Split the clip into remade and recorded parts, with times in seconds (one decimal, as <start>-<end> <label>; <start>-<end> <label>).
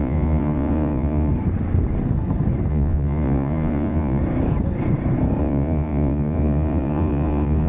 0.0-1.3 remade; 1.3-2.7 recorded; 2.7-4.2 remade; 4.2-5.4 recorded; 5.4-7.7 remade